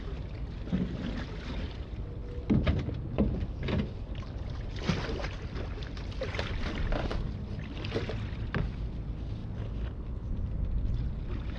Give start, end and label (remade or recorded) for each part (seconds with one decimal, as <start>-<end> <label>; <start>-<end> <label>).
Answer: 0.0-11.6 recorded